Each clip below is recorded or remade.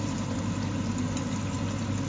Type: recorded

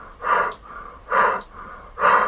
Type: recorded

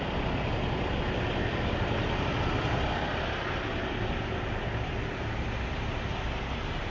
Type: recorded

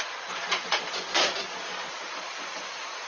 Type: remade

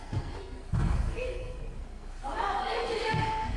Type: remade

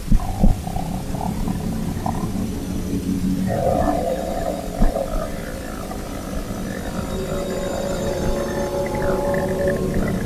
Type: recorded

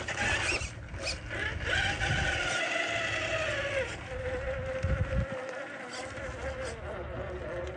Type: recorded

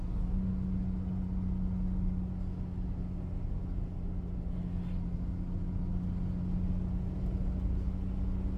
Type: recorded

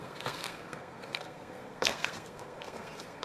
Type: remade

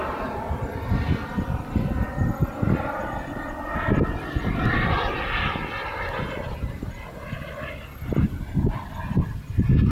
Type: recorded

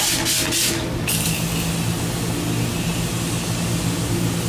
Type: recorded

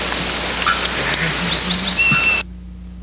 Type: recorded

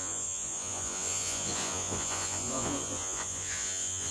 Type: remade